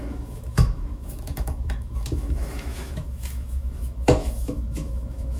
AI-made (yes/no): yes